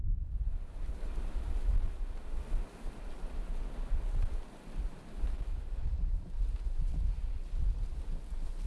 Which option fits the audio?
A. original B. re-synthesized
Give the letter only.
A